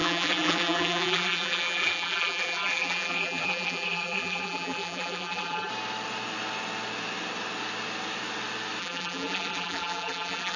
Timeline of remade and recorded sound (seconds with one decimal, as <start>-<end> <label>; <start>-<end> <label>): 0.0-5.7 remade; 5.7-8.8 recorded; 8.8-10.6 remade